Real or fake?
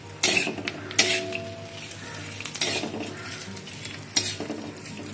real